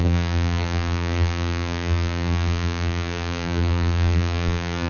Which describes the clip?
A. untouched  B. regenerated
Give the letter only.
B